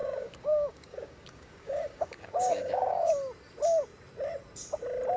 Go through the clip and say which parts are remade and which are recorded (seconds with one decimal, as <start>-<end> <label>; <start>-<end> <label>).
0.0-3.1 remade; 3.1-5.2 recorded